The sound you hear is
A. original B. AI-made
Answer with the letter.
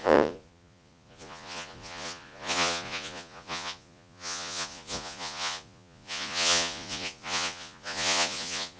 B